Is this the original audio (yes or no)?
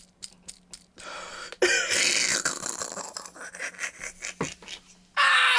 yes